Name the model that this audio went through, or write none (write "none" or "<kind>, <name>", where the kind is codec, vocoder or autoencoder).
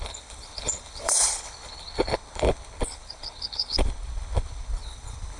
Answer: codec, HILCodec